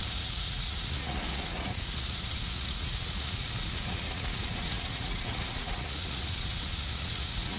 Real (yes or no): no